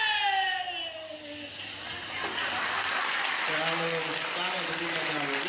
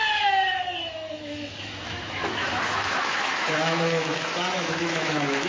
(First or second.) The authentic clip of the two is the first